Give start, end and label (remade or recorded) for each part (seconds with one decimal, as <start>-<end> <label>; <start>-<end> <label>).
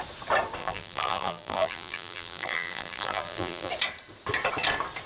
0.0-0.6 recorded; 0.6-3.7 remade; 3.7-5.1 recorded